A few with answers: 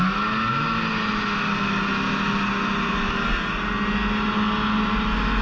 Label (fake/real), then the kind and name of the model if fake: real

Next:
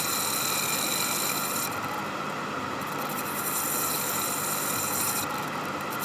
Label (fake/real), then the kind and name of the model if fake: real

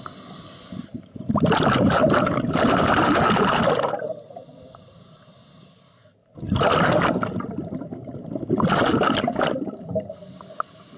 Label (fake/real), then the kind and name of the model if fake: real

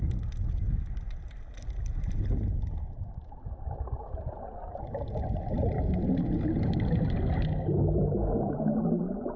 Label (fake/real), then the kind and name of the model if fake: real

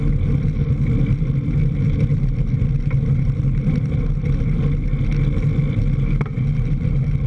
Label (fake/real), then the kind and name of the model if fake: real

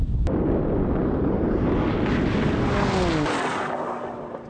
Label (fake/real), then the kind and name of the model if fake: real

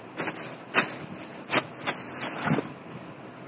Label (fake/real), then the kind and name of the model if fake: real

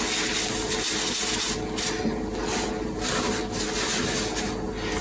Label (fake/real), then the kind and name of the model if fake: real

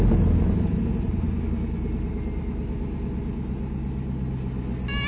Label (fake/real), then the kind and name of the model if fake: real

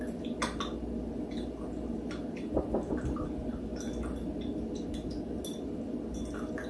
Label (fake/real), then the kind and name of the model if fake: real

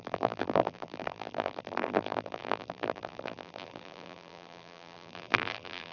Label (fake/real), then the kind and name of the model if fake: fake, vocoder, BigVGAN v2